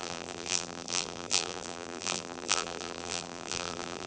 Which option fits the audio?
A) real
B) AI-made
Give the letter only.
B